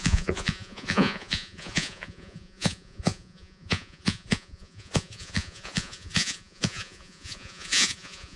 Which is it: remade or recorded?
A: remade